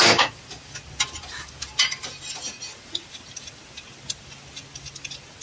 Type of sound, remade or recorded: recorded